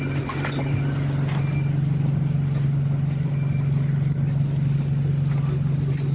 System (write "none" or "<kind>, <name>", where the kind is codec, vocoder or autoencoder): none